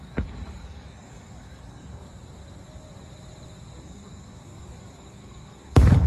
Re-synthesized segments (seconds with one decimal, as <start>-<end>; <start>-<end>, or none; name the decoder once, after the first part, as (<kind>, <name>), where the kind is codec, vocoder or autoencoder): 0.0-2.1 (codec, DAC); 3.8-6.1